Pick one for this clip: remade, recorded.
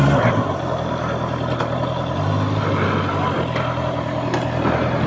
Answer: recorded